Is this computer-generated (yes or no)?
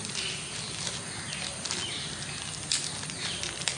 no